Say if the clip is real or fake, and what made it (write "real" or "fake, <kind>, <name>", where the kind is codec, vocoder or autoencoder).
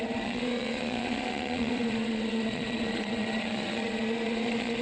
fake, vocoder, Vocos